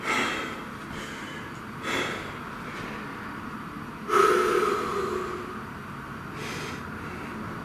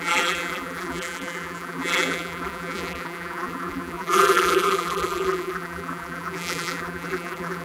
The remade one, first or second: second